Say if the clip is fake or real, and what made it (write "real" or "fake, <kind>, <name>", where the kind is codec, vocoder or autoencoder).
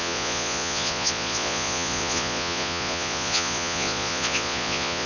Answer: fake, vocoder, Vocos